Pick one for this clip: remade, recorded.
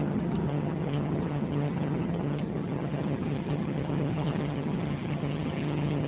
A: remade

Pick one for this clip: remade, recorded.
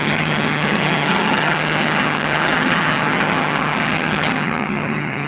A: remade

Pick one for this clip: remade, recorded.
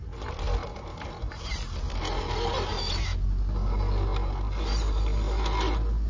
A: recorded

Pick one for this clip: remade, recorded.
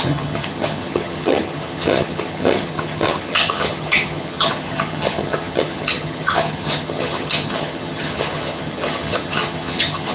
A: remade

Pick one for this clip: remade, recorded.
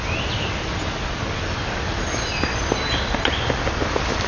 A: recorded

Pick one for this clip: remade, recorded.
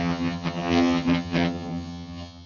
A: remade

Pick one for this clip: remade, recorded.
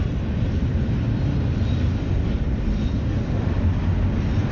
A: recorded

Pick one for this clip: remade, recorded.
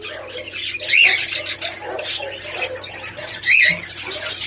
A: recorded